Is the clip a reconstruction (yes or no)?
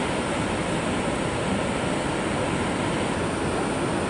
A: no